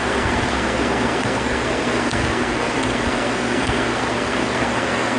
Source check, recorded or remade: remade